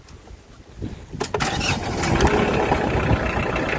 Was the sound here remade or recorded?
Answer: recorded